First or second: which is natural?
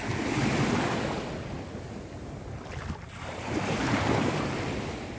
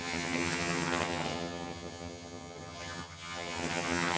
first